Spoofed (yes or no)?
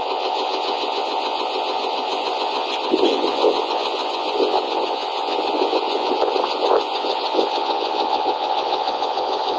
yes